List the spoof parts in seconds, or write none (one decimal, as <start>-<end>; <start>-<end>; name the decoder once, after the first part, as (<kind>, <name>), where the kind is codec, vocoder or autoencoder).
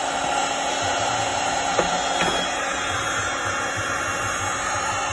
none